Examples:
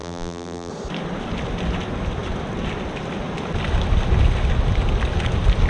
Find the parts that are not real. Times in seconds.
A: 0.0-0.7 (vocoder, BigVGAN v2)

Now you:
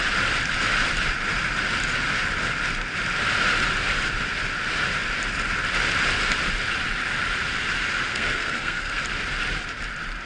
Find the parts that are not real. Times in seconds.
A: 8.1-9.0 (codec, SNAC)

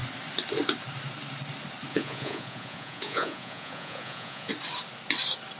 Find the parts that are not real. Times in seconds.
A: 1.9-4.5 (vocoder, Vocos)

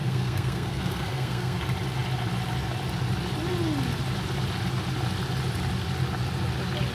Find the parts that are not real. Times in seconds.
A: 0.0-1.6 (codec, SNAC)

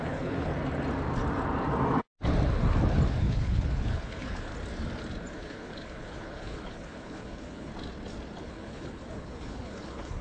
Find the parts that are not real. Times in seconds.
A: 0.0-0.5 (codec, HILCodec); 3.2-4.5; 5.3-7.7; 8.4-10.2

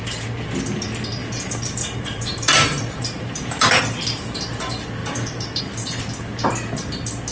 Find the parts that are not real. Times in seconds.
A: 1.2-3.8 (vocoder, BigVGAN v2); 5.0-5.6

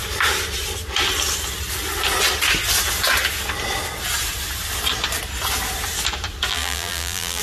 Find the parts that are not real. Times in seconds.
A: 6.5-7.4 (vocoder, BigVGAN v2)

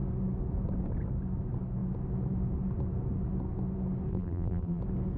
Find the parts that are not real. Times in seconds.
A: 4.1-4.8 (vocoder, BigVGAN v2)